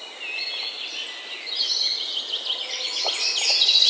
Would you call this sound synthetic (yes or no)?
no